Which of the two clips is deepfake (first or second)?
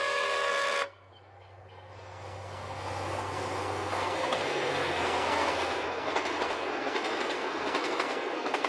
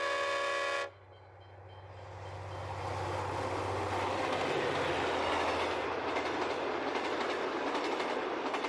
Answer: first